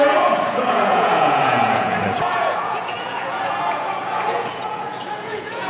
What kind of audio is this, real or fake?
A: fake